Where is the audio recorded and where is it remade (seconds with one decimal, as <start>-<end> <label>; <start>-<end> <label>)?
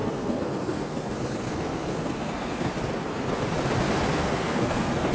0.0-2.7 remade; 2.7-4.1 recorded; 4.1-5.1 remade